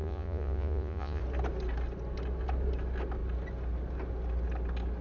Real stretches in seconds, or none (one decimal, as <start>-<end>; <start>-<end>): 1.2-5.0